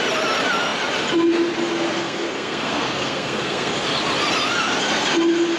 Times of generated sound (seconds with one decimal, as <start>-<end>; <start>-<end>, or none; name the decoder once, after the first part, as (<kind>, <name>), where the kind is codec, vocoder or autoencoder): 1.9-3.7 (codec, SNAC)